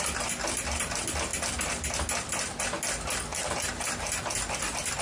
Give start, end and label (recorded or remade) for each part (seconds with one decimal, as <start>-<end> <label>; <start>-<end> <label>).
0.0-3.3 recorded; 3.3-3.9 remade; 3.9-5.0 recorded